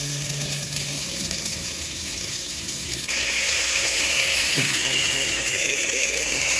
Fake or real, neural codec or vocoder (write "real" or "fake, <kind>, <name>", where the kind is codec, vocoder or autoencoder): fake, codec, SNAC